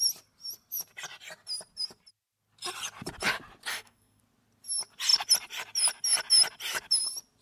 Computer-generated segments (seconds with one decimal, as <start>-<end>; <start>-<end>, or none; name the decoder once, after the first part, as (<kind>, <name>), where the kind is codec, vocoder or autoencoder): 3.7-4.2 (codec, SNAC)